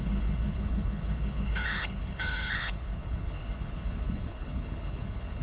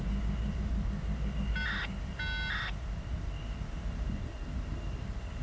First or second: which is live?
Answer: second